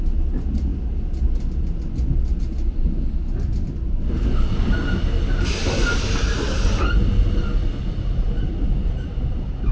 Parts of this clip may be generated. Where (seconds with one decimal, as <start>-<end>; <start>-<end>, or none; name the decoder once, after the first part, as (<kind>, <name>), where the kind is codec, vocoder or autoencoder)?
none